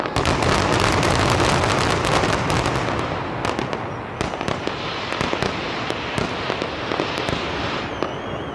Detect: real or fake real